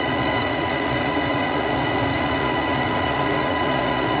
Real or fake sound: fake